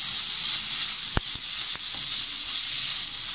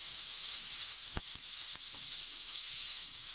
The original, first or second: first